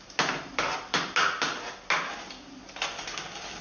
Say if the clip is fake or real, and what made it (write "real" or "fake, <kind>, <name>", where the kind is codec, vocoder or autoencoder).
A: real